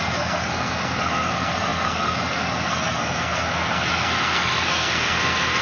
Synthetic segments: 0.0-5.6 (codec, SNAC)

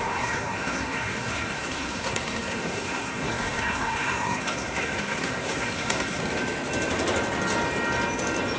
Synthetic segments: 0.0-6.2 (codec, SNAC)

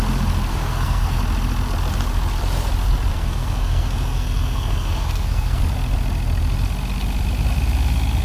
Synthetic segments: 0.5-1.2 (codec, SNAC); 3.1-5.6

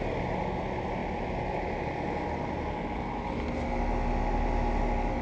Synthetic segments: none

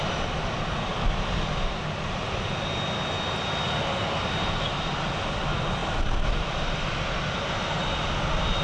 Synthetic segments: none

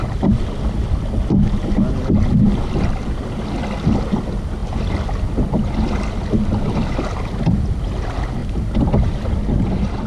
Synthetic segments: none

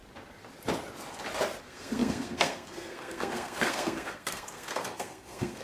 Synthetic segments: 1.6-5.6 (codec, SNAC)

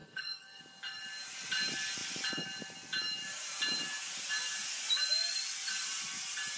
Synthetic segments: 0.0-0.6 (codec, SNAC)